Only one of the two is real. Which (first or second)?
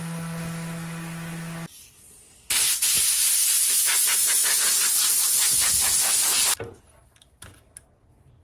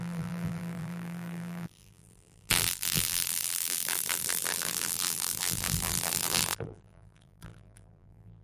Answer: first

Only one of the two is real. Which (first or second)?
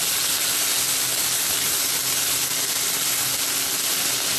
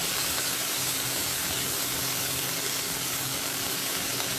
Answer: first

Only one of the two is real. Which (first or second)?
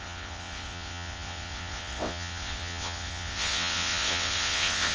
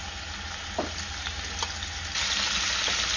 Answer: second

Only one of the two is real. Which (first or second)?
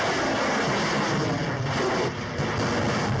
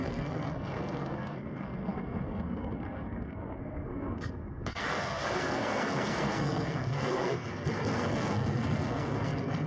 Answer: first